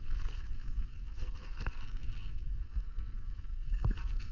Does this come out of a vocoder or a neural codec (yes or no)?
yes